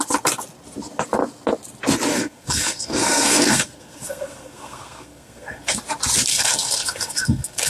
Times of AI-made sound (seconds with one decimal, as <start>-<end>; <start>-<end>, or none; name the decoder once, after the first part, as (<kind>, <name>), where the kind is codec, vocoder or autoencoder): 2.1-5.8 (codec, SNAC); 6.3-7.7